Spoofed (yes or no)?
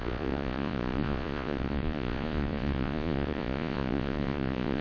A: yes